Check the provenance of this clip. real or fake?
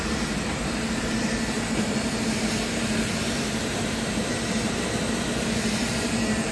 fake